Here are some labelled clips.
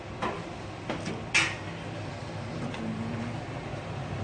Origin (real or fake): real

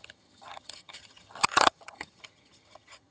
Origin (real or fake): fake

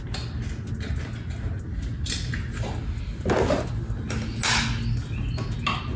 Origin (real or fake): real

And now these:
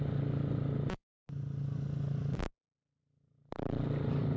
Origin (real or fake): real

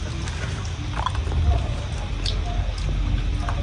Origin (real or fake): real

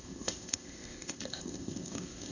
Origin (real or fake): fake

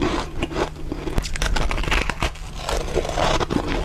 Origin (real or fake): real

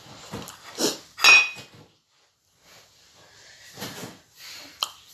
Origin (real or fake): real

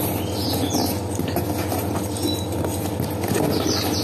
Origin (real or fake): real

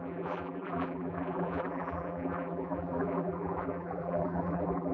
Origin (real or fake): fake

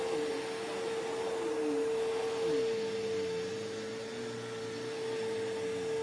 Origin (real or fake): real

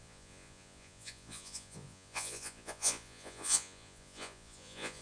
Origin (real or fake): fake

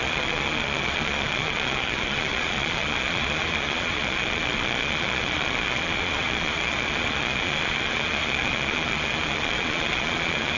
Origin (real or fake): fake